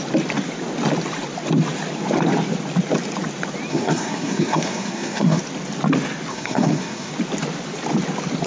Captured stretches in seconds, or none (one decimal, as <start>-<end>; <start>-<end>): 0.0-3.7; 5.4-6.3; 7.1-8.5

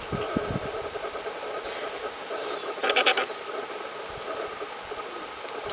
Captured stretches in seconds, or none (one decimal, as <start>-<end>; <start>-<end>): 0.0-5.7